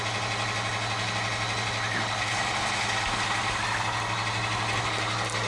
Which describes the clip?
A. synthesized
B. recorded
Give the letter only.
B